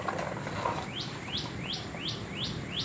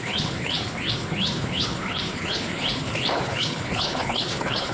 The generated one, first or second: second